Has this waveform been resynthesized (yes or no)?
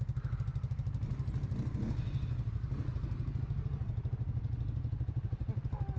no